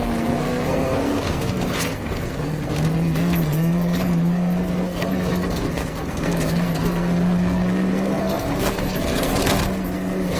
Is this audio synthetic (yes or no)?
yes